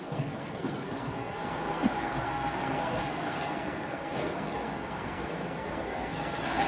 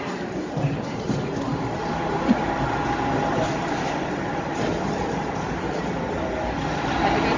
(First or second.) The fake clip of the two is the first